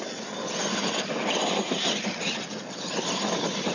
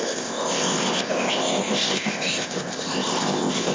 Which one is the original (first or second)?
first